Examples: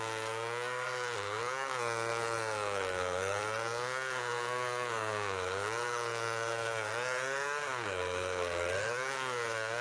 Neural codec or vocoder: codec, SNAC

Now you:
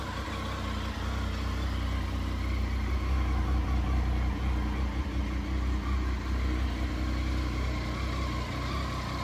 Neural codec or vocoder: none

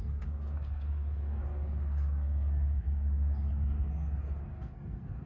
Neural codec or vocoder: codec, SNAC